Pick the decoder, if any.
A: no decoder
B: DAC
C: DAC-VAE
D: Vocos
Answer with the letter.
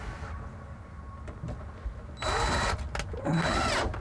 A